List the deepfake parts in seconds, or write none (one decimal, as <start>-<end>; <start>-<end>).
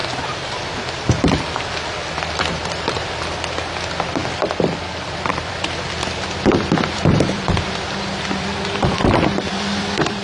2.5-4.2; 5.3-10.2